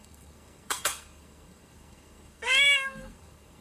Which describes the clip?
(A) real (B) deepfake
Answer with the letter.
B